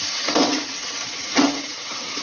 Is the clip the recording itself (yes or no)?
no